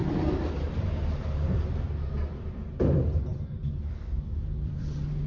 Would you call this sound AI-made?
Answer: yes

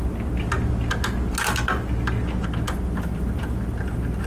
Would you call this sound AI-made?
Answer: no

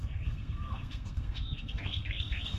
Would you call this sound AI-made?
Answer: yes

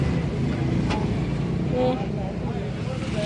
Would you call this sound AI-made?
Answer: no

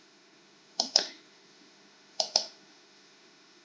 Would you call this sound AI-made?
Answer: yes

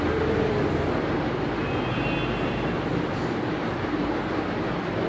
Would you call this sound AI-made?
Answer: no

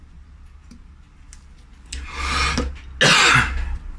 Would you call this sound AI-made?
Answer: no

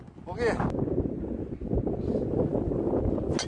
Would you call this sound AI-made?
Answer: no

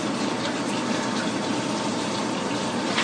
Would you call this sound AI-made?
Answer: yes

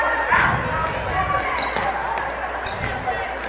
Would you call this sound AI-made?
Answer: no